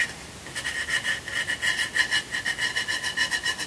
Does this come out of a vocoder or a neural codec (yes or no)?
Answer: no